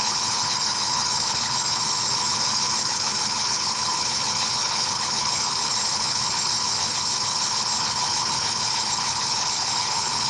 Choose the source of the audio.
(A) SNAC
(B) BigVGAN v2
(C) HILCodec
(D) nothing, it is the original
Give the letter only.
C